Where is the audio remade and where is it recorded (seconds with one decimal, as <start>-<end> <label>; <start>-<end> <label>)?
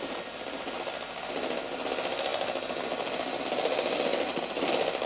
0.0-5.1 recorded